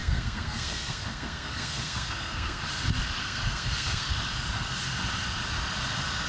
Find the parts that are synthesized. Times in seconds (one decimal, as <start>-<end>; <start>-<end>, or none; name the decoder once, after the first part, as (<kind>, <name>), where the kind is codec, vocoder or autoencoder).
0.0-2.6 (codec, SNAC); 3.2-4.1